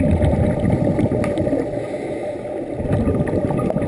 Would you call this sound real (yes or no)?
yes